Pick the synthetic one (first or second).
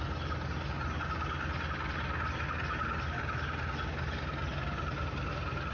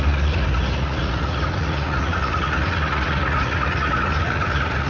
second